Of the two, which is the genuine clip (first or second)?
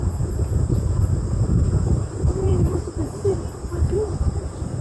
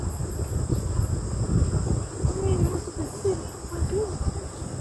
second